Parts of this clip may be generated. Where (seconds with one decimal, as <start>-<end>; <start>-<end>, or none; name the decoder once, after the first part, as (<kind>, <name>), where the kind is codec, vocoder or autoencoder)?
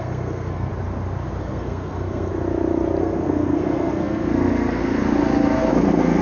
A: 0.0-0.7 (codec, SNAC); 1.4-2.3; 3.0-4.8; 5.7-6.2